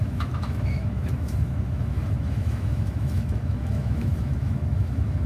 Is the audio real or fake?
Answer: fake